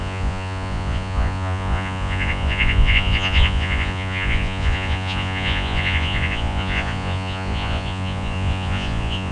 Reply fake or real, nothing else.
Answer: fake